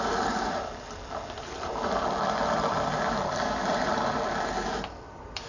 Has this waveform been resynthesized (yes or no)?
yes